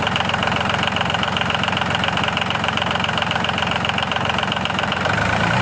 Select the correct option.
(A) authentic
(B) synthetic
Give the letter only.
B